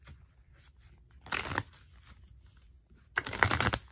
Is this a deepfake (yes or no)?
no